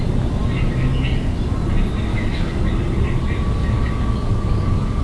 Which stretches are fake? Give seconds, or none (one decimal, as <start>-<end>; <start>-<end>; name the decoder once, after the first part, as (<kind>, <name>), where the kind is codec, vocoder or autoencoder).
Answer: 2.1-2.6 (codec, DAC); 3.6-5.0